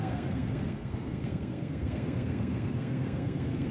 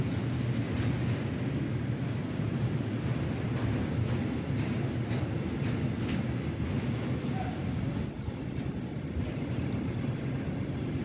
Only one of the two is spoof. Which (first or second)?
first